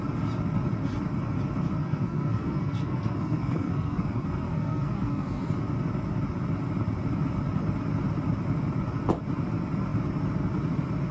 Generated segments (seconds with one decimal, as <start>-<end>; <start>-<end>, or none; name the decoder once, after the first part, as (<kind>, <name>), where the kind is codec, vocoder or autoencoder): 1.8-5.5 (codec, SNAC)